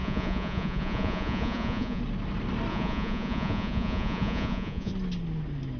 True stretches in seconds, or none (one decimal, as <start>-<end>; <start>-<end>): 2.0-2.7; 4.9-5.8